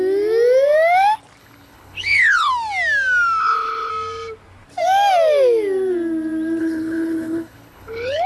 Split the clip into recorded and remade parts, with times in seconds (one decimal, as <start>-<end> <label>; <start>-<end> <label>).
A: 0.0-1.4 recorded; 1.4-2.5 remade; 2.5-3.4 recorded; 3.4-3.9 remade; 3.9-6.6 recorded; 6.6-8.3 remade